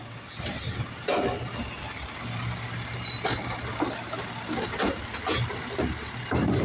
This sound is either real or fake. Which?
real